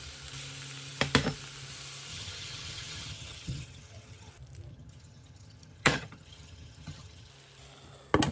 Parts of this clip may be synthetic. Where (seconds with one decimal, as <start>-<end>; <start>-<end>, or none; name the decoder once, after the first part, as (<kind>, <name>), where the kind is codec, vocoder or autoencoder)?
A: 2.1-4.3 (vocoder, HiFi-GAN); 4.7-7.3